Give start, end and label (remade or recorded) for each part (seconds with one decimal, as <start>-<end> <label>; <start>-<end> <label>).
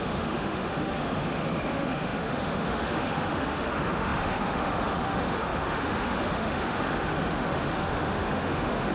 0.0-8.9 remade